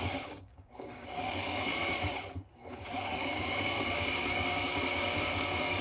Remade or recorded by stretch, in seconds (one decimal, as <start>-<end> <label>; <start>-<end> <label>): 0.0-1.7 remade; 1.7-2.3 recorded; 2.3-5.8 remade